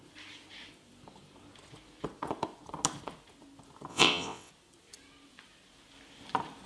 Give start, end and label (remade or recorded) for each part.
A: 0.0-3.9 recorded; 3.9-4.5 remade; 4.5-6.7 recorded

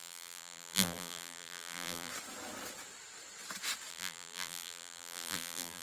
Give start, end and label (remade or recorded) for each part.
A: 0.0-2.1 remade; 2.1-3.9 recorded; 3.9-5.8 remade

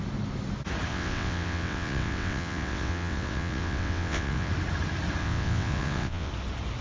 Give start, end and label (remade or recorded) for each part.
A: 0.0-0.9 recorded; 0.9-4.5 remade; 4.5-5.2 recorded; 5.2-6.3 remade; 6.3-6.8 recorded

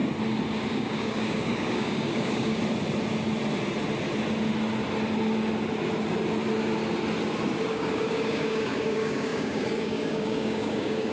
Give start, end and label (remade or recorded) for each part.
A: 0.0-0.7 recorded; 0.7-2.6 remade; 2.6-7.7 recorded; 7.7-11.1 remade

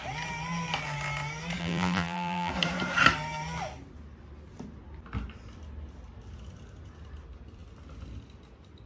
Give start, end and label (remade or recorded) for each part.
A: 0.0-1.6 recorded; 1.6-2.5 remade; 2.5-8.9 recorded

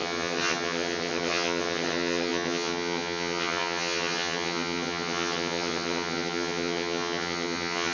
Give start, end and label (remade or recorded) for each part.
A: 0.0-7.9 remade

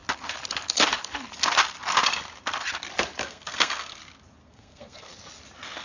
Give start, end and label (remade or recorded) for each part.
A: 0.0-3.2 recorded; 3.2-4.0 remade; 4.0-4.4 recorded; 4.4-5.1 remade; 5.1-5.8 recorded

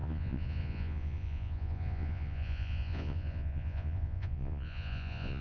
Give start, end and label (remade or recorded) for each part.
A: 0.0-5.4 remade